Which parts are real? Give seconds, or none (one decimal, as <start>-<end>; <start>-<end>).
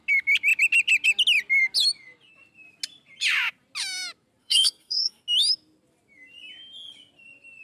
0.0-4.4; 5.1-7.6